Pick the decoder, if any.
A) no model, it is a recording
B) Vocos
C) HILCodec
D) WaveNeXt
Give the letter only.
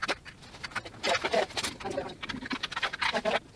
A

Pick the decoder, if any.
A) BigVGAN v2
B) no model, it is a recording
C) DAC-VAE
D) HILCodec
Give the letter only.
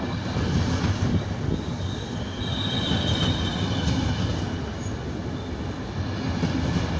B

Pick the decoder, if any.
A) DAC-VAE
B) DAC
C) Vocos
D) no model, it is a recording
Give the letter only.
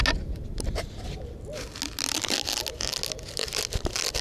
D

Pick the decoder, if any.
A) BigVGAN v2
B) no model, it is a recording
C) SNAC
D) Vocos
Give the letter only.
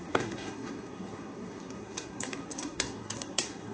C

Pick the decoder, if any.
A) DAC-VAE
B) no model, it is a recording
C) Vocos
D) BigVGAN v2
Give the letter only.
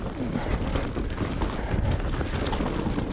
B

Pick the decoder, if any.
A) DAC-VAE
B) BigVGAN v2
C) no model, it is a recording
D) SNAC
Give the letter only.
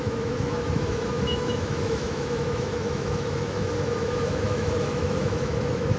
A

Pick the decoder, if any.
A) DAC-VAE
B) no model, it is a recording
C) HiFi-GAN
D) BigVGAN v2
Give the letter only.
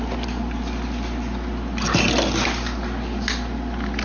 B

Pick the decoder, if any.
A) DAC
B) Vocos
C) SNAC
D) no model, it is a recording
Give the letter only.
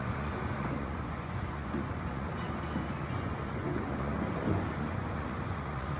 B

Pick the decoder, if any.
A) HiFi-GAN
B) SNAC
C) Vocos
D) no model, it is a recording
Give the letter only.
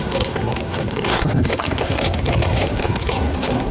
B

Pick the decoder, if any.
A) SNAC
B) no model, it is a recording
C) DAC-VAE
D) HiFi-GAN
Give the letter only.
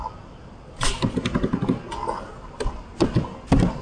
B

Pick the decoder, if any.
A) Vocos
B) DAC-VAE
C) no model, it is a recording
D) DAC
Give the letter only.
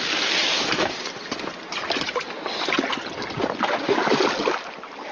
C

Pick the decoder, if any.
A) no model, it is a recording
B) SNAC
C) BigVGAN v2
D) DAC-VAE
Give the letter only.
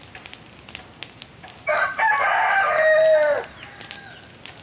A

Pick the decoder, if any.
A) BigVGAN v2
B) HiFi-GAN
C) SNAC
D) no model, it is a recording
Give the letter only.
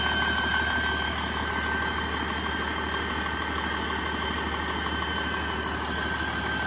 D